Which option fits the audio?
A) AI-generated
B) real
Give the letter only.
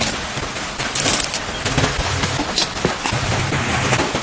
B